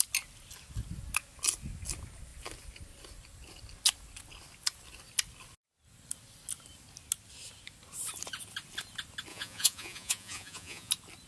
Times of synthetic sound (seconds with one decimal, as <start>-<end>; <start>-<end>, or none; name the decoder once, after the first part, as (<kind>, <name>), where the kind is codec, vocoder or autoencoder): 9.3-10.9 (vocoder, Vocos)